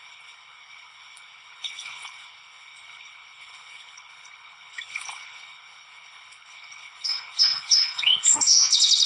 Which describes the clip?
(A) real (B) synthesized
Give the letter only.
B